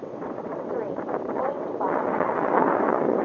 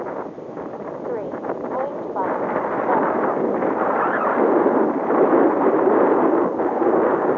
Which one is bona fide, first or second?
second